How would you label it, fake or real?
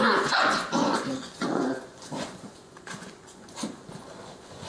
fake